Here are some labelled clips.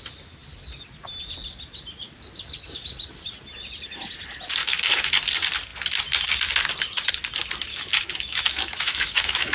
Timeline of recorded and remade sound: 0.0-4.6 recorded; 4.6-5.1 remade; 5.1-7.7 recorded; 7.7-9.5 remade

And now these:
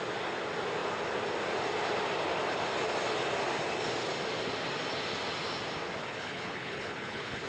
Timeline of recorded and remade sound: 0.0-6.0 recorded; 6.0-7.5 remade

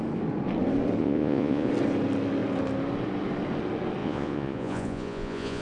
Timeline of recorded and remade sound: 0.0-1.0 recorded; 1.0-1.7 remade; 1.7-4.0 recorded; 4.0-5.6 remade